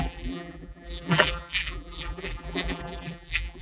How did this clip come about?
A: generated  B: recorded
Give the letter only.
A